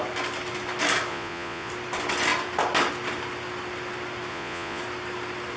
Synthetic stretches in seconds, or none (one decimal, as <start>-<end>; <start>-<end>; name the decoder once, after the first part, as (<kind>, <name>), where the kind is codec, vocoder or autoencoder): 1.1-1.7 (vocoder, Vocos); 4.3-4.8